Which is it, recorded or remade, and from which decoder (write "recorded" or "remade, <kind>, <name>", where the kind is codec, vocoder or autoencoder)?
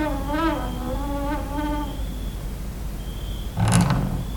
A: recorded